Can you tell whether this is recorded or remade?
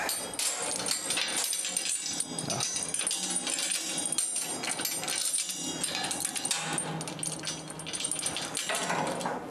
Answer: recorded